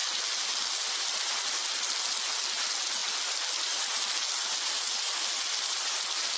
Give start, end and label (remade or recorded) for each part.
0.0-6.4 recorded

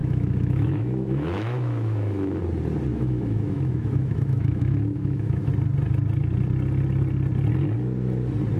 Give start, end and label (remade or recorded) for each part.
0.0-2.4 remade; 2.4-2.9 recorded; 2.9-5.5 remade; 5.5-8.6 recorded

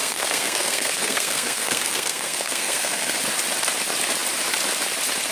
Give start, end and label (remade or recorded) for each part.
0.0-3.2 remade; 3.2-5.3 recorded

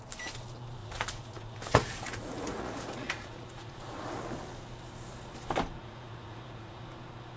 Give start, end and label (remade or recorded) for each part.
0.0-0.8 recorded; 0.8-4.2 remade; 4.2-5.8 recorded; 5.8-6.8 remade; 6.8-7.4 recorded

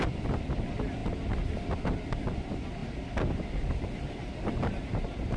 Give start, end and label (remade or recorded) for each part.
0.0-5.4 recorded

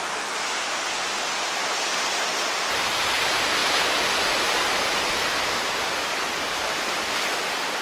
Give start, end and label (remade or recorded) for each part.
0.0-1.6 recorded; 1.6-3.1 remade; 3.1-3.6 recorded; 3.6-6.7 remade; 6.7-7.8 recorded

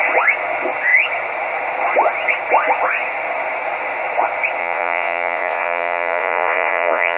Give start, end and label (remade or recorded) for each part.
0.0-4.6 recorded; 4.6-7.2 remade